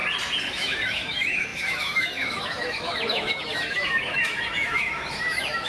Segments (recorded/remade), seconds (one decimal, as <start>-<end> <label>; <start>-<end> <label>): 0.0-0.5 recorded; 0.5-5.7 remade